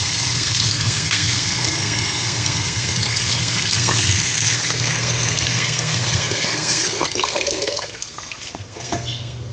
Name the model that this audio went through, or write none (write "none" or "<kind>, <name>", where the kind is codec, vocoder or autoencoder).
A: codec, SNAC